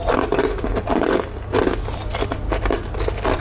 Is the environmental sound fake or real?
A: real